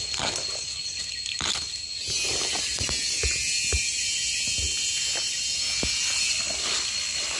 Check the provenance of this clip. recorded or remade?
recorded